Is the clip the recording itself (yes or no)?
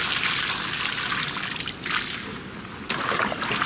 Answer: yes